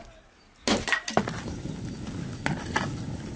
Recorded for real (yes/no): yes